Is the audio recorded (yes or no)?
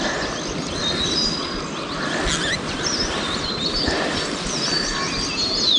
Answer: yes